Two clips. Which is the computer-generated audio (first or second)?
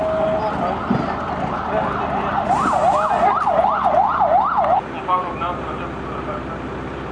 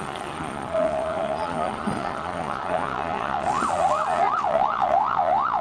second